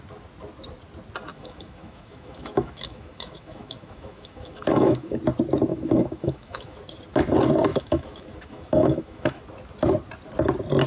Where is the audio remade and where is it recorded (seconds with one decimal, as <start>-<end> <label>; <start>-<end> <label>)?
0.0-1.3 recorded; 1.3-5.2 remade; 5.2-5.7 recorded; 5.7-6.8 remade; 6.8-7.7 recorded; 7.7-9.4 remade; 9.4-10.9 recorded